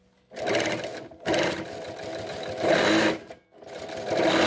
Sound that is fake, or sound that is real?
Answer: real